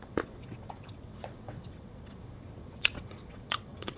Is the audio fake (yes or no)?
yes